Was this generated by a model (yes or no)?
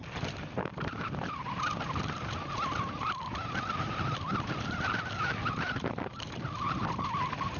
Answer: yes